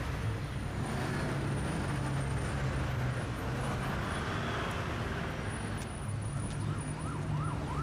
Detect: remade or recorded recorded